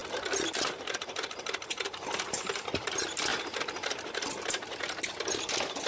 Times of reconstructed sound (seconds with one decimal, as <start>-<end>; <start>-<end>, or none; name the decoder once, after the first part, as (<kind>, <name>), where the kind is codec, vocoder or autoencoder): none